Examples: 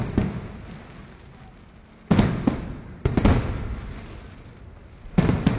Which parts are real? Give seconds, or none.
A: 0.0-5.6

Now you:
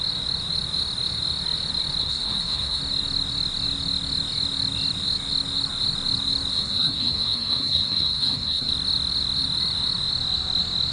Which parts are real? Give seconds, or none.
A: 0.0-2.0; 2.8-6.5; 8.7-10.9

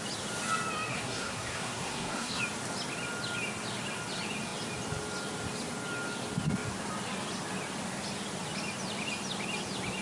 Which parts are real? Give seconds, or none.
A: 0.0-0.9; 2.4-10.0

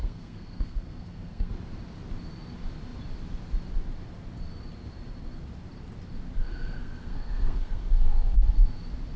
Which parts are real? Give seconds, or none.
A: 1.5-6.4; 8.4-9.2

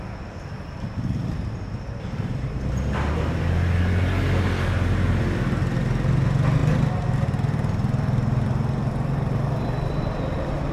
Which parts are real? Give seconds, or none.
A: 0.0-10.7

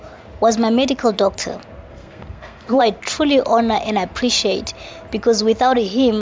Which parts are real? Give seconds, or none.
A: 0.0-1.9; 2.8-6.2

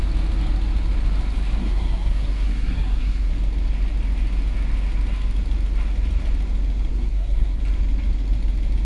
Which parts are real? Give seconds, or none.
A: 0.0-1.6; 3.3-6.9; 7.6-8.8

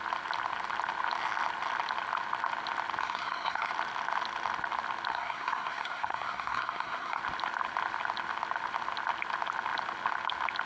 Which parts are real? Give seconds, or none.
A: 0.0-3.0; 3.7-5.1; 7.2-10.7